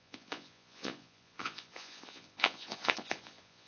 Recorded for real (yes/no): no